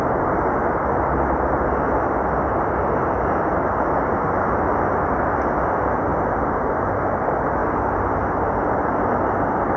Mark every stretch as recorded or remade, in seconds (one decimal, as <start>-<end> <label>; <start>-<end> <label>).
0.0-9.8 recorded